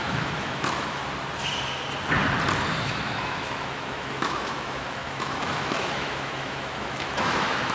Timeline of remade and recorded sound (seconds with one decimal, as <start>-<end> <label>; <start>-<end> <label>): 0.0-1.0 remade; 1.0-2.8 recorded; 2.8-7.7 remade